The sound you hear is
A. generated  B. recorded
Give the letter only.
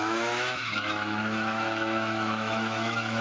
A